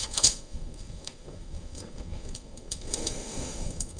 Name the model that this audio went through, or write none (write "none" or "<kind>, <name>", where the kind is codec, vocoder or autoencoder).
codec, SNAC